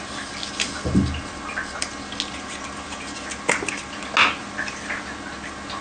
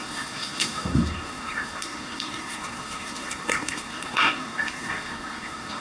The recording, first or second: first